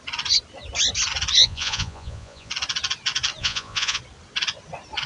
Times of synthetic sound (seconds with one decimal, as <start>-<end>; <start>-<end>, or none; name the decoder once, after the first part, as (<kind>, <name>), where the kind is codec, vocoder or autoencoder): 1.4-2.5 (vocoder, Vocos); 3.4-4.0